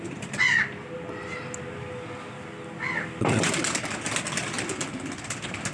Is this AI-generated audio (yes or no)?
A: no